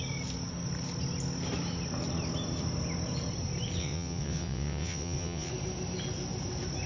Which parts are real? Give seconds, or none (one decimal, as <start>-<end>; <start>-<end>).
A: 0.0-3.8; 5.5-6.9